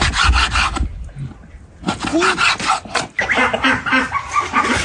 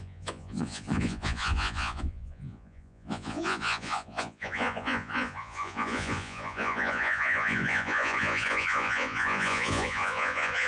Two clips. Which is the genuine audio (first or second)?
first